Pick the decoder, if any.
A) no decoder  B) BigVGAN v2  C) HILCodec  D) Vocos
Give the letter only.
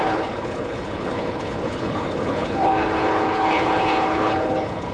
C